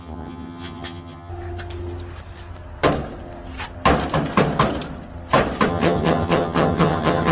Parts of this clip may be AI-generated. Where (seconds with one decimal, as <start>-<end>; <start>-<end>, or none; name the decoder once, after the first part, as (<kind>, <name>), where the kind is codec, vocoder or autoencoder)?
0.0-1.3 (vocoder, HiFi-GAN); 5.7-7.3